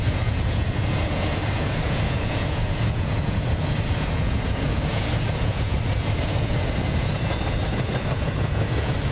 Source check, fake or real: fake